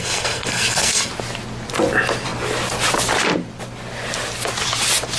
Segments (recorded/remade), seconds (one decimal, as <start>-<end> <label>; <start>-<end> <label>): 0.0-1.1 remade; 1.1-5.2 recorded

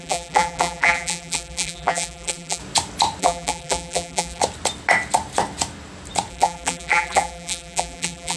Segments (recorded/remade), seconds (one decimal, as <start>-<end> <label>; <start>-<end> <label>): 0.0-2.6 remade; 2.6-3.2 recorded; 3.2-4.4 remade; 4.4-6.3 recorded; 6.3-8.4 remade

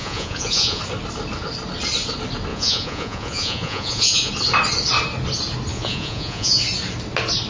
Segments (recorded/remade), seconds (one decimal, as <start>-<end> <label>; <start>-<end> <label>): 0.0-0.8 remade; 0.8-2.5 recorded; 2.5-4.3 remade; 4.3-5.7 recorded; 5.7-6.6 remade; 6.6-7.5 recorded

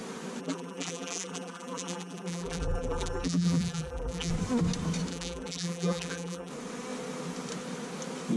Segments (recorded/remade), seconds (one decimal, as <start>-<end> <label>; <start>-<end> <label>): 0.0-0.4 recorded; 0.4-4.3 remade; 4.3-5.1 recorded; 5.1-6.5 remade; 6.5-8.4 recorded

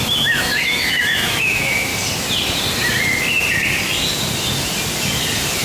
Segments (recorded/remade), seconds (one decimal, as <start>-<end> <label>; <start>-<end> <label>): 0.0-1.9 remade; 1.9-5.6 recorded

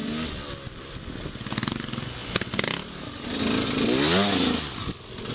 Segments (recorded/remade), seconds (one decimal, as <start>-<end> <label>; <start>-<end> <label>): 0.0-5.3 recorded